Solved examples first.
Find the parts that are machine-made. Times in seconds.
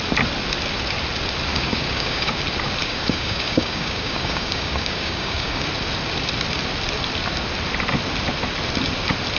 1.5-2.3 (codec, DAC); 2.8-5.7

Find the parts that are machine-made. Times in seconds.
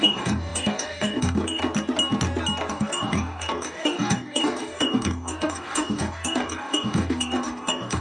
0.0-1.6 (codec, DAC); 2.7-8.0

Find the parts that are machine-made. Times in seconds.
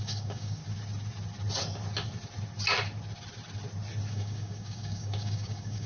0.0-0.6 (codec, DAC); 4.1-5.9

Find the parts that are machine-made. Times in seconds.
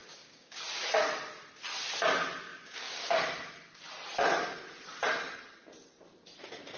0.0-0.6 (codec, DAC); 2.5-3.2